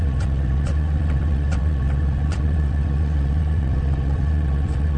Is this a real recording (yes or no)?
no